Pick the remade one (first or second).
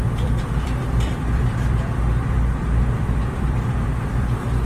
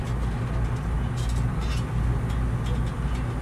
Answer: first